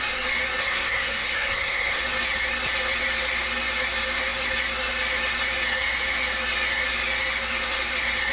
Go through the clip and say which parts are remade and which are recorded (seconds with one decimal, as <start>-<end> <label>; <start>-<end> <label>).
0.0-0.6 recorded; 0.6-2.0 remade; 2.0-8.3 recorded